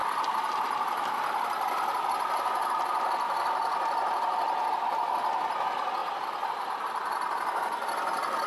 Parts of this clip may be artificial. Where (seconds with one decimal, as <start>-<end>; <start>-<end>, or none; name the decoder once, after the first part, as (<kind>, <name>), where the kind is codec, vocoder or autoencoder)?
none